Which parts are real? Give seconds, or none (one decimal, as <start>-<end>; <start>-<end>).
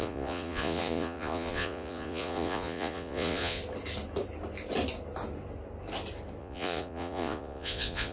3.6-6.4